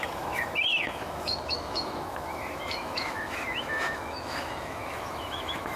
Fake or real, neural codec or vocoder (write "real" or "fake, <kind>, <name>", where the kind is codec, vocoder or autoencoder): fake, autoencoder, DAC-VAE